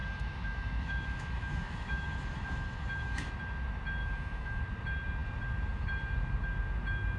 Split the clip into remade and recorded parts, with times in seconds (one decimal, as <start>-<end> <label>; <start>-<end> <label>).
0.0-3.3 remade; 3.3-4.0 recorded; 4.0-4.6 remade; 4.6-7.2 recorded